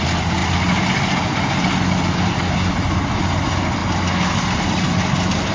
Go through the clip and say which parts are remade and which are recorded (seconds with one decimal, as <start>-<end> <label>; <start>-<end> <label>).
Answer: 0.0-5.5 recorded